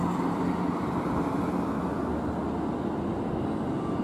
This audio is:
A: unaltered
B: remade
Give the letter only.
A